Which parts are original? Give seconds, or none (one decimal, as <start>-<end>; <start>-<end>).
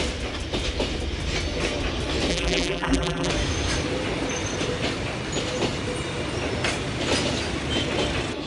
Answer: 0.0-2.3; 3.3-8.5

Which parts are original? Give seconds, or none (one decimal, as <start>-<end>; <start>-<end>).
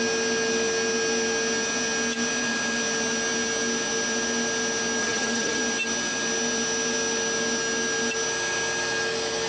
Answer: 0.0-5.0; 5.6-9.5